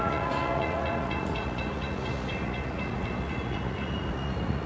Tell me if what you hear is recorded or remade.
remade